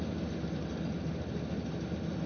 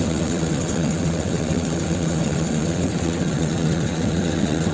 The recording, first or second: first